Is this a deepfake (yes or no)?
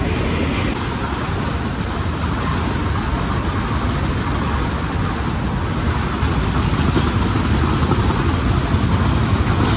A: no